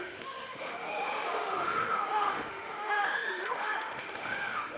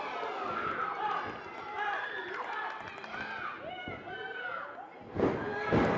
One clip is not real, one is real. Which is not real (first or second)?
first